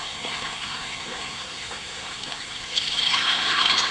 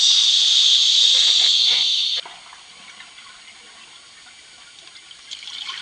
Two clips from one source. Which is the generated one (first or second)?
first